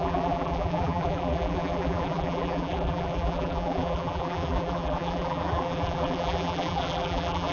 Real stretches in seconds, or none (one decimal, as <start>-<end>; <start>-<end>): none